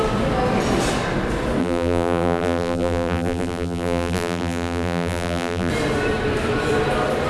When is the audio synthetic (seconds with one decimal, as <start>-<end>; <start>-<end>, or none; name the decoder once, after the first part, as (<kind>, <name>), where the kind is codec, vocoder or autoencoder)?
1.6-5.7 (vocoder, BigVGAN v2)